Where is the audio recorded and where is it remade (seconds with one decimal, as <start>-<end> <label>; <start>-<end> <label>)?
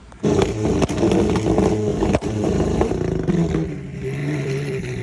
0.0-0.7 remade; 0.7-1.9 recorded; 1.9-3.3 remade; 3.3-4.2 recorded; 4.2-5.0 remade